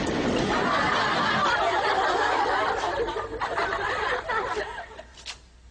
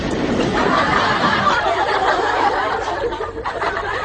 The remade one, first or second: second